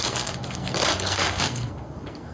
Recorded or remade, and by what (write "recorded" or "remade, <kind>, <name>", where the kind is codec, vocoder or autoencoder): remade, codec, SNAC